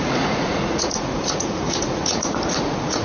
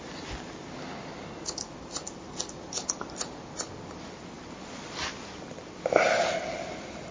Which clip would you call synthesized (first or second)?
first